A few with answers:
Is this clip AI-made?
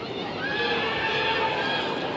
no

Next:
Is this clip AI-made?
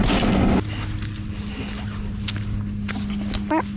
no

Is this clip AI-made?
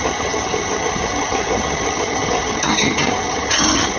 yes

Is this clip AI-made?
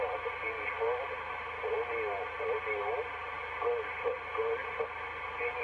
no